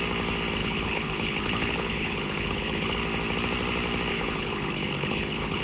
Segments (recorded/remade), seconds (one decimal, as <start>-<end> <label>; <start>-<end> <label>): 0.0-0.6 recorded; 0.6-3.0 remade; 3.0-4.1 recorded; 4.1-5.6 remade